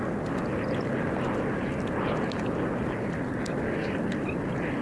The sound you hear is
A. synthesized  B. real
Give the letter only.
B